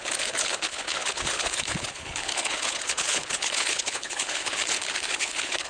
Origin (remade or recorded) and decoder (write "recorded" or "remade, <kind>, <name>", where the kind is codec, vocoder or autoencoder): remade, codec, HILCodec